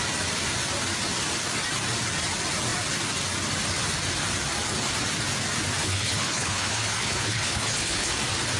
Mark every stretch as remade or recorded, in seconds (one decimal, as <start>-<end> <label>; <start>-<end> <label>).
0.0-5.8 recorded; 5.8-8.1 remade; 8.1-8.6 recorded